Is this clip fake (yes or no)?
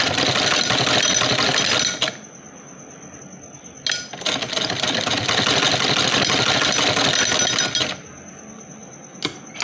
no